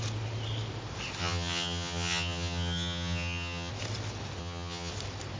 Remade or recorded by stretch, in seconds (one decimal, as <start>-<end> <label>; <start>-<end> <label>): 0.0-1.2 recorded; 1.2-3.7 remade; 3.7-4.4 recorded; 4.4-4.9 remade; 4.9-5.4 recorded